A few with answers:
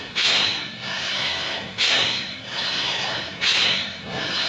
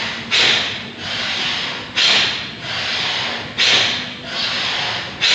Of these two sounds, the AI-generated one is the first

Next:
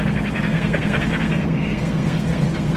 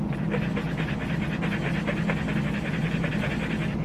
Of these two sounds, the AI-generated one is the first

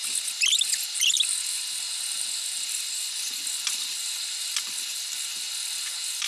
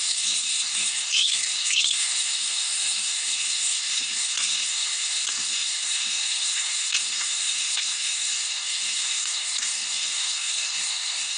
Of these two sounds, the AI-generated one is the second